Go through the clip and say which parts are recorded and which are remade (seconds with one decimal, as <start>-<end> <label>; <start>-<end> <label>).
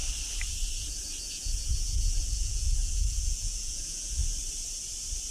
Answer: 0.0-1.3 recorded; 1.3-4.2 remade; 4.2-5.3 recorded